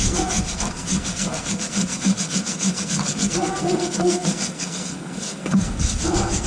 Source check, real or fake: fake